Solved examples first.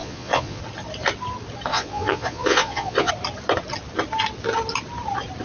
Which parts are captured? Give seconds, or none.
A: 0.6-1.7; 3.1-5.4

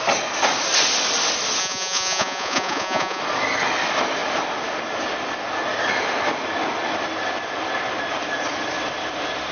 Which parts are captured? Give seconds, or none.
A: 0.0-1.6; 3.2-9.5

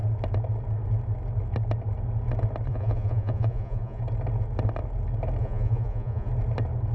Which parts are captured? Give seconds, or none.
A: 0.0-2.7; 4.0-5.4; 6.3-6.9